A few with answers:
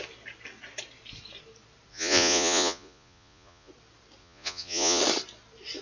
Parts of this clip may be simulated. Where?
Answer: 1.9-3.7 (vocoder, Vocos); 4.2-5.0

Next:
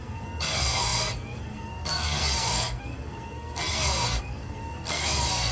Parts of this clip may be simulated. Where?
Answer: 0.0-5.5 (codec, SNAC)